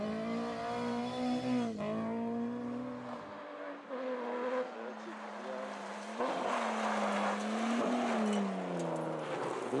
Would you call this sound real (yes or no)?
yes